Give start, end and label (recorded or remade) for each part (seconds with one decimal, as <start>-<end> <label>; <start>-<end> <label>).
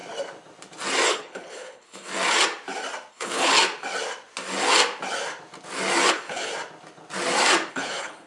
0.0-1.1 recorded; 1.1-2.1 remade; 2.1-3.1 recorded; 3.1-3.5 remade; 3.5-6.1 recorded; 6.1-6.5 remade; 6.5-7.7 recorded; 7.7-8.3 remade